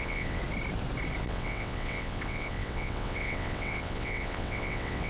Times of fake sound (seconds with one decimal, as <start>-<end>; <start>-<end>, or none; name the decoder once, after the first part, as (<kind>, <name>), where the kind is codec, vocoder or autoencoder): 0.0-0.4 (vocoder, WaveNeXt); 1.2-5.1